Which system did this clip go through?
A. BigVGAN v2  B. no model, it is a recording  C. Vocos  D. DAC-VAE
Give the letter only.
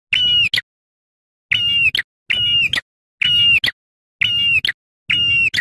B